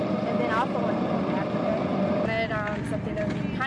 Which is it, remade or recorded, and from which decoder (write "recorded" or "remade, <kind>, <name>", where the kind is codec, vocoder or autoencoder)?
recorded